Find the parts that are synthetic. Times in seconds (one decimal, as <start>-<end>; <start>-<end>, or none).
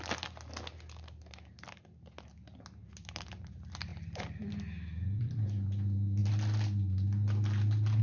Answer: none